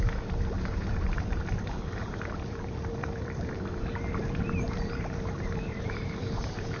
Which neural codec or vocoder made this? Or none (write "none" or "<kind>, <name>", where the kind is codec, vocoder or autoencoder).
vocoder, BigVGAN v2